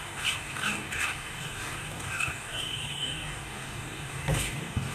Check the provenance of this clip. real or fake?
fake